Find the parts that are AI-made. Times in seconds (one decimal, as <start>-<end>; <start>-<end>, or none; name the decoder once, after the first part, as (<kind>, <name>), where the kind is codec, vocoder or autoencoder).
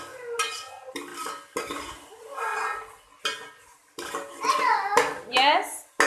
1.1-2.1 (vocoder, BigVGAN v2); 3.8-5.3